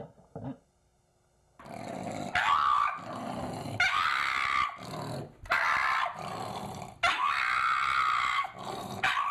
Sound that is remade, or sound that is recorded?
recorded